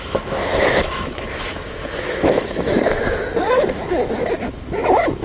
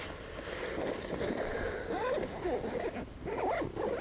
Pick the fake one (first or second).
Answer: first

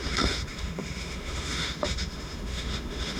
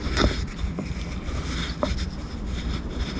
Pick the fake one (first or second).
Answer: first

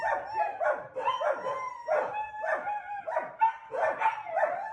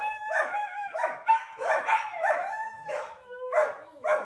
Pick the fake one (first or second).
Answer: second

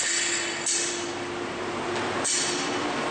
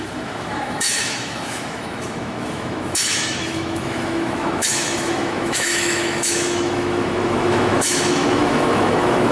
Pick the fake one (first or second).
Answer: second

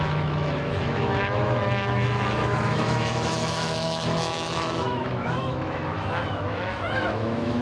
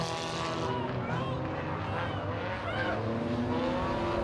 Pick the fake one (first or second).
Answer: first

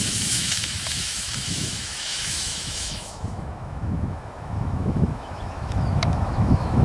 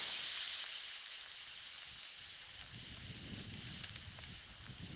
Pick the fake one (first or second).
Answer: first